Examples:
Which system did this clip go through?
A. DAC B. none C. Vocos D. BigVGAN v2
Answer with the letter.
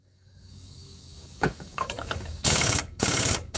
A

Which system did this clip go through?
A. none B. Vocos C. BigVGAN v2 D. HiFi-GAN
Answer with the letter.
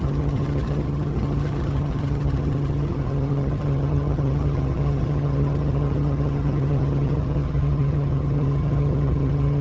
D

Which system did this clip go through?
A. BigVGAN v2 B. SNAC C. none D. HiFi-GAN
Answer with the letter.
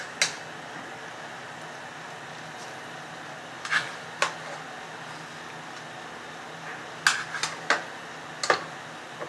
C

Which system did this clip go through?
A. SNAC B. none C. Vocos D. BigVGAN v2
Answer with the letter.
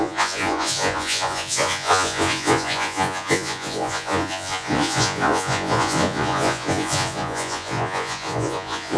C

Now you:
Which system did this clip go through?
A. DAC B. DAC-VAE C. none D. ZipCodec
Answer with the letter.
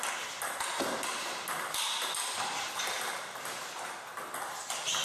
C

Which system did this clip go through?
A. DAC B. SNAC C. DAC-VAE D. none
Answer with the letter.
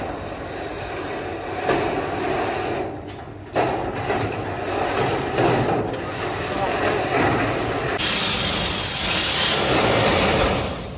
D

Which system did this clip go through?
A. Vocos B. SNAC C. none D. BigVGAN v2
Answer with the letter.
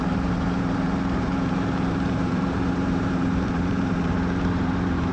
D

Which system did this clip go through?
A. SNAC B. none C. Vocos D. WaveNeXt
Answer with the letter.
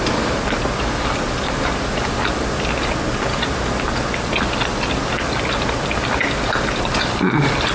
B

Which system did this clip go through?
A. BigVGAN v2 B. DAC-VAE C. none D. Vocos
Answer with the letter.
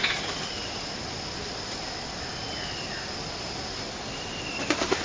C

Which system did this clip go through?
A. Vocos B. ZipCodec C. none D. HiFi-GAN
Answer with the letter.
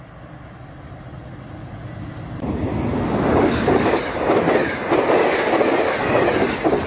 C